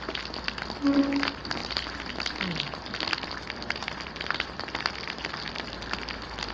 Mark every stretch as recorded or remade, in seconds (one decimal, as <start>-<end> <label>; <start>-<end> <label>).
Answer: 0.0-6.5 recorded